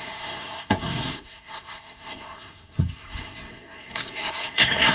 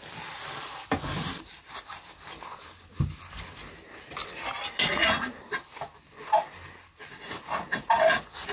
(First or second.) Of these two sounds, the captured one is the second